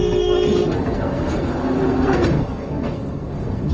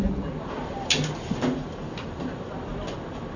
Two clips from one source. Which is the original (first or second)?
second